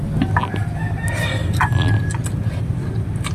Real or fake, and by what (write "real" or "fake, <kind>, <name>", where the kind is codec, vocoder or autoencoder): real